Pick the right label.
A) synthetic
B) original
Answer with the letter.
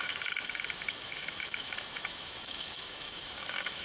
A